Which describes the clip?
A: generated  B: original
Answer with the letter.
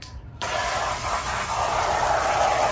A